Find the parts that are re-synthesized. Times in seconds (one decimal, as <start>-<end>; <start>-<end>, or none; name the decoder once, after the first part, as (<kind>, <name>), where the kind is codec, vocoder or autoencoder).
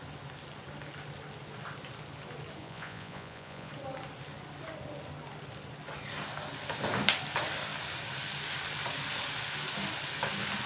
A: 2.6-3.7 (vocoder, Vocos)